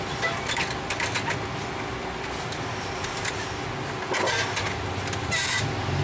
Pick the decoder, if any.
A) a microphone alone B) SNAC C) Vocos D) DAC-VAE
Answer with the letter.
A